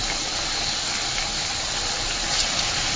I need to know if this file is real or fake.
real